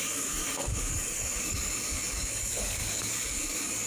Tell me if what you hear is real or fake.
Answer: fake